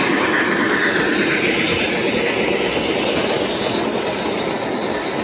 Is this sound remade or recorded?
recorded